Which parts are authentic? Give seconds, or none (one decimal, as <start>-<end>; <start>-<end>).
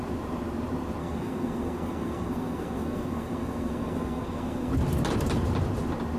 0.0-1.0; 4.7-6.2